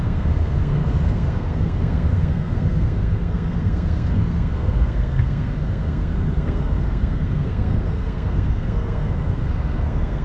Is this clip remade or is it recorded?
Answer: remade